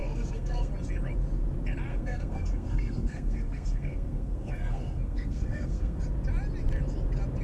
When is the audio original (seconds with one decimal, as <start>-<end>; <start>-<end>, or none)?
0.7-1.9; 6.0-7.4